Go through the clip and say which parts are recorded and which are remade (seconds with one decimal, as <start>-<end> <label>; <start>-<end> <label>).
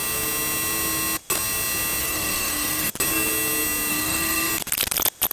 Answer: 0.0-2.0 recorded; 2.0-2.9 remade; 2.9-3.9 recorded; 3.9-4.5 remade; 4.5-5.3 recorded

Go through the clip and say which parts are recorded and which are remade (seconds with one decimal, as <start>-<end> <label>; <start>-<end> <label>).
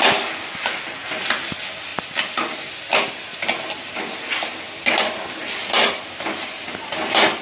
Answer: 0.0-7.4 recorded